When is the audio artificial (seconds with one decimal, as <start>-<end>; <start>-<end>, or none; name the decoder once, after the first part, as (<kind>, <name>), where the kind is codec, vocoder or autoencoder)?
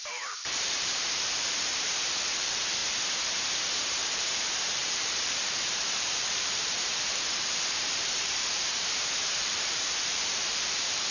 0.0-2.8 (vocoder, BigVGAN v2); 3.3-11.1